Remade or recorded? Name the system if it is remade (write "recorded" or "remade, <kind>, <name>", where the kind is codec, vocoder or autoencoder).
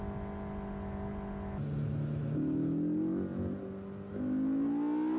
recorded